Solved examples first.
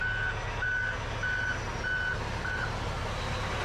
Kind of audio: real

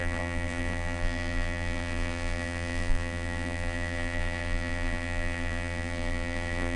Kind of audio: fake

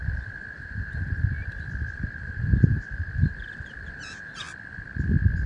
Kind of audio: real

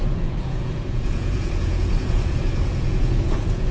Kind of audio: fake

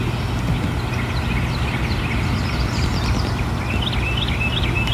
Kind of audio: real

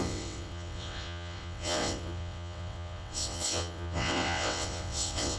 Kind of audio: fake